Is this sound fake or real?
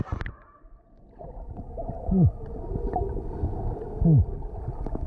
real